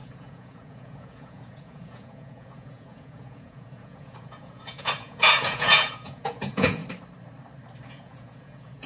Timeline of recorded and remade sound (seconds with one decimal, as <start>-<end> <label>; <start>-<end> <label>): 0.0-6.8 remade; 6.8-7.9 recorded; 7.9-8.9 remade